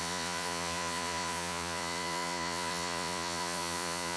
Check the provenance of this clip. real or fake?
fake